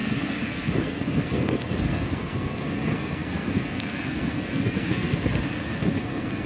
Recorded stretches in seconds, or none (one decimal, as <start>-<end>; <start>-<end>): none